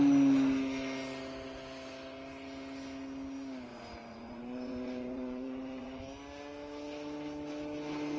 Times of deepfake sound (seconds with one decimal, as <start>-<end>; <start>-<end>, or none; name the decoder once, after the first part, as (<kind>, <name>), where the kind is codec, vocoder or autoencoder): 3.7-6.0 (vocoder, Vocos)